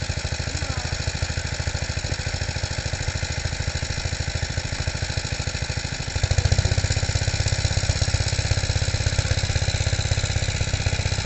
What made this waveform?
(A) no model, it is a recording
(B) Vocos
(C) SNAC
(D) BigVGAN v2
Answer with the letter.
A